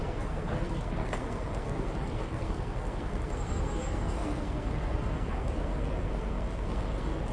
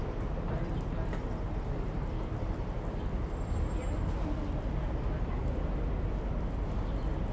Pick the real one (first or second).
second